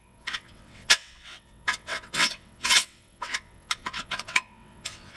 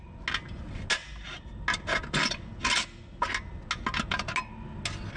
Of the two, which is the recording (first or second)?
second